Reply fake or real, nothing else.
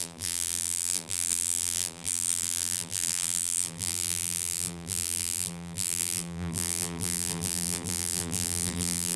fake